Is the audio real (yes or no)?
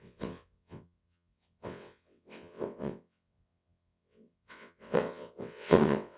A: no